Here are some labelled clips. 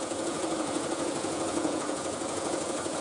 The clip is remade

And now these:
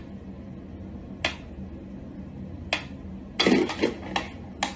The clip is recorded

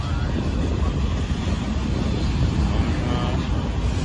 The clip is recorded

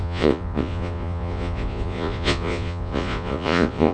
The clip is remade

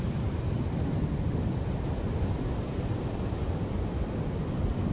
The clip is recorded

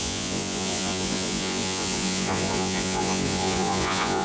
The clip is remade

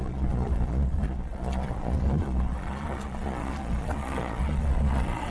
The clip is remade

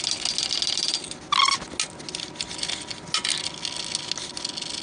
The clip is recorded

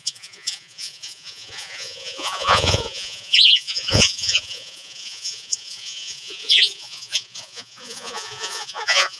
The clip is remade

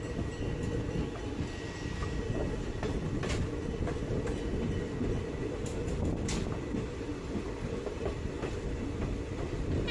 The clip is recorded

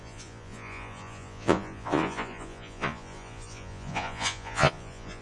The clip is remade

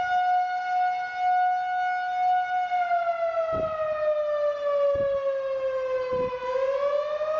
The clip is recorded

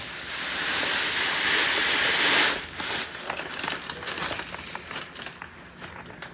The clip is recorded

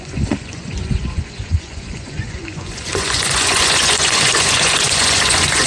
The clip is remade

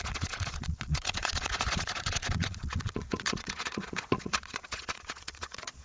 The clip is remade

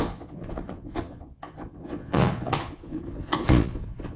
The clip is remade